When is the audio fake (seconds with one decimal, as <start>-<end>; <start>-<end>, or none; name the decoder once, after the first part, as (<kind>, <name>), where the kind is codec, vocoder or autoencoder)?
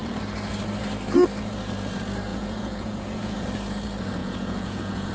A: 2.3-3.5 (vocoder, Vocos); 4.2-5.1